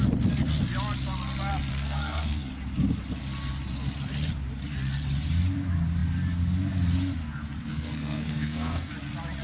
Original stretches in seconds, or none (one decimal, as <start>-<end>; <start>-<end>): 0.0-1.7; 2.5-7.7; 8.9-9.4